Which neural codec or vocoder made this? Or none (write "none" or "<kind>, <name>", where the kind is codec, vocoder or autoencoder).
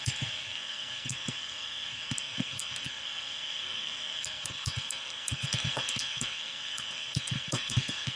codec, SNAC